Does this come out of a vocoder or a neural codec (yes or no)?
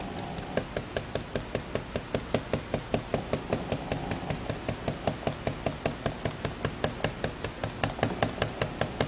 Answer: no